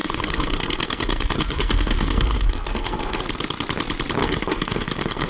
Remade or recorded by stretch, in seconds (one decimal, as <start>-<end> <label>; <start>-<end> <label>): 0.0-3.2 remade; 3.2-4.2 recorded; 4.2-5.3 remade